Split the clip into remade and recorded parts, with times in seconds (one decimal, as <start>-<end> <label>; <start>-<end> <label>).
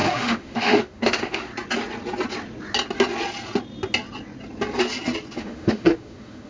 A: 0.0-1.5 remade; 1.5-5.4 recorded; 5.4-6.5 remade